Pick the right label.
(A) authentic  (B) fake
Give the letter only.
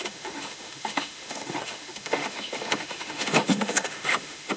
B